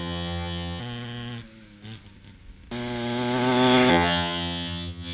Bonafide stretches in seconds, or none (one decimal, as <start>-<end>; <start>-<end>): 0.8-3.9